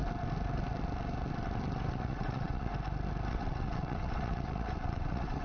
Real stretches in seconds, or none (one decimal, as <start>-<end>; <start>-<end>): 0.0-1.9; 2.7-3.3